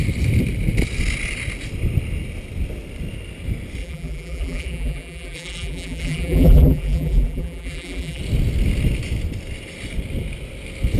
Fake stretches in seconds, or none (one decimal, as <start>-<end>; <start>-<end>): 3.8-8.2